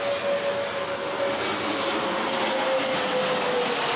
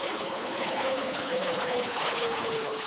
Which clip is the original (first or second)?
first